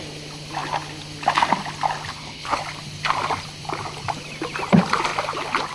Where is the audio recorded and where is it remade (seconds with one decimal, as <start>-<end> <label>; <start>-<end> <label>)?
0.0-2.1 recorded; 2.1-2.6 remade; 2.6-5.7 recorded